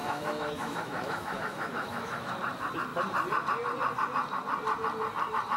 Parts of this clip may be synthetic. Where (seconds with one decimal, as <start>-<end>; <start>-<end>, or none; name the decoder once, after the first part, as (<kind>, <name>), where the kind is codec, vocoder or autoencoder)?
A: 0.0-2.3 (autoencoder, DAC-VAE)